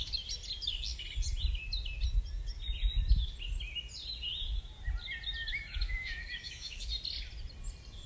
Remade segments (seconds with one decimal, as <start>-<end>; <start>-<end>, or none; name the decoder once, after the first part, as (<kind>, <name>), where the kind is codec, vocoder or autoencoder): 5.5-6.9 (autoencoder, DAC-VAE)